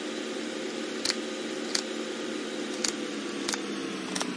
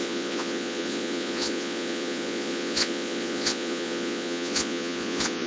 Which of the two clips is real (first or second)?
first